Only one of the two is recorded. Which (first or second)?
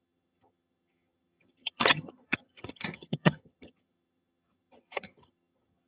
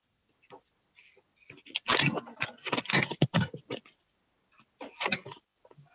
second